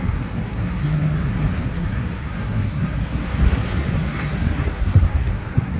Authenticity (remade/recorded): remade